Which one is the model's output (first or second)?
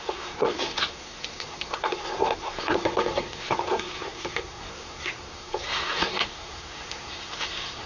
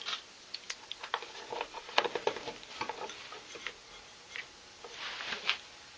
first